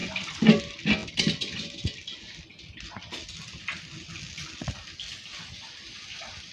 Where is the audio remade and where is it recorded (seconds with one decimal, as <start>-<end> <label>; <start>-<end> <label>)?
0.0-0.6 remade; 0.6-6.5 recorded